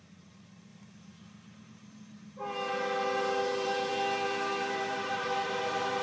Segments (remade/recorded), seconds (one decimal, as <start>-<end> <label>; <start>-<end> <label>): 0.0-0.7 remade; 0.7-1.6 recorded; 1.6-3.9 remade; 3.9-4.7 recorded; 4.7-6.0 remade